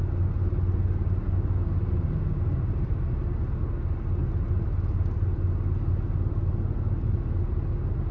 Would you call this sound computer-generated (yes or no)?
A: no